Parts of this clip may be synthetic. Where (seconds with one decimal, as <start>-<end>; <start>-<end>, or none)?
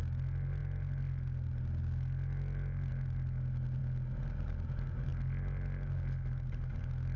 none